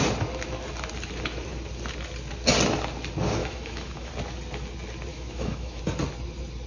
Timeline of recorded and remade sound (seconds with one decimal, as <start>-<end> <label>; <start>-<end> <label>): 0.0-3.4 recorded; 3.4-4.1 remade; 4.1-5.1 recorded; 5.1-5.8 remade; 5.8-6.7 recorded